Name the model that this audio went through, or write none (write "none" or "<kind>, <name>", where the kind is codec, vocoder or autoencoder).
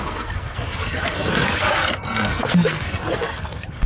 codec, SNAC